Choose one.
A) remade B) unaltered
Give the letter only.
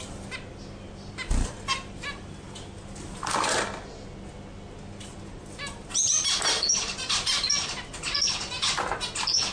B